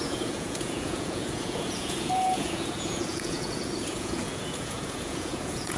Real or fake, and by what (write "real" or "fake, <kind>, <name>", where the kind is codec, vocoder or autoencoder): fake, vocoder, Vocos